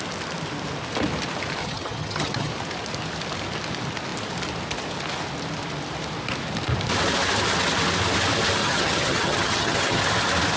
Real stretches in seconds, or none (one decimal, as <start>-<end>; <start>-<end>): 0.0-1.6; 2.5-8.6; 10.0-10.6